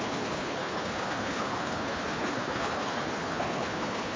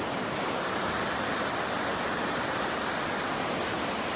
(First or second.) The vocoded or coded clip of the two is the first